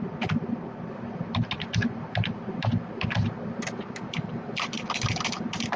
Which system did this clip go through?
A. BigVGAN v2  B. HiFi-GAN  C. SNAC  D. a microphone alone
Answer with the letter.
D